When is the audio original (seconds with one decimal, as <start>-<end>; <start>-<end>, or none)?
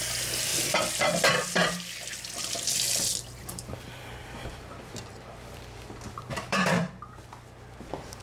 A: 0.0-3.4; 6.9-8.2